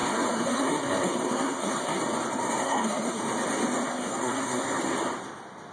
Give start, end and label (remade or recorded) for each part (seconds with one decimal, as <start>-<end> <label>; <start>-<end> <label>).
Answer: 0.0-2.0 remade; 2.0-2.6 recorded; 2.6-3.2 remade; 3.2-3.9 recorded; 3.9-4.8 remade; 4.8-5.7 recorded